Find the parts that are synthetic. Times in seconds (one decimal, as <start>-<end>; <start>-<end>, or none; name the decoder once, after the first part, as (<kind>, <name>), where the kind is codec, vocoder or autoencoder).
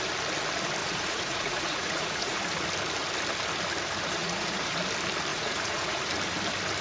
0.8-2.4 (vocoder, Vocos); 4.2-4.7; 5.3-6.0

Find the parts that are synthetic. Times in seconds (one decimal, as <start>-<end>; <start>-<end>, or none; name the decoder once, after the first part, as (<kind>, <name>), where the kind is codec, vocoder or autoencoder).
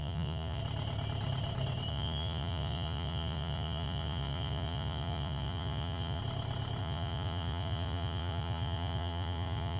0.0-0.6 (vocoder, Vocos); 1.9-6.2; 6.8-9.8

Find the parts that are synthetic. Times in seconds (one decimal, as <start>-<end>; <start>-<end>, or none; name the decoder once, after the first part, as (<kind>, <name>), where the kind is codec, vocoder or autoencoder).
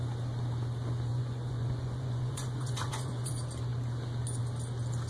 1.1-3.3 (vocoder, Vocos)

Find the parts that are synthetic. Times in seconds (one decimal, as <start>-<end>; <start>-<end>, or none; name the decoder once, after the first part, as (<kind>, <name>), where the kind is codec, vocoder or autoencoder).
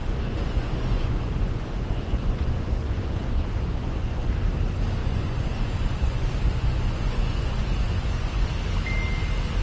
0.0-4.3 (vocoder, Vocos); 5.0-8.5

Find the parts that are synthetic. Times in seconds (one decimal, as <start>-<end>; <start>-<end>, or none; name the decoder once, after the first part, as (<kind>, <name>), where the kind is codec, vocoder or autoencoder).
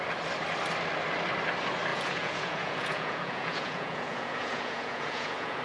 1.9-5.6 (vocoder, Vocos)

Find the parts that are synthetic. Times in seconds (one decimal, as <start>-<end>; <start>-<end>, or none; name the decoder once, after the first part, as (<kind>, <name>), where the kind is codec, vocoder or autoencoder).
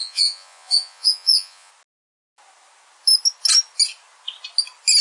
0.0-1.7 (vocoder, Vocos)